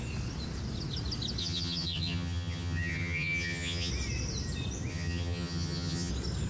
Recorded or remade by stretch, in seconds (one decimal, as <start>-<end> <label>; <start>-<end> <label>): 0.0-1.4 recorded; 1.4-3.9 remade; 3.9-4.9 recorded; 4.9-6.1 remade; 6.1-6.5 recorded